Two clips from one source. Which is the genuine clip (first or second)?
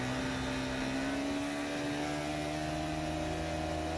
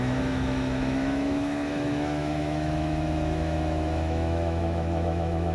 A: first